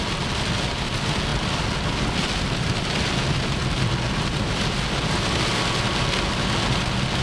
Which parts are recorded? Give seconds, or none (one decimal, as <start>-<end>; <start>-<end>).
0.0-7.2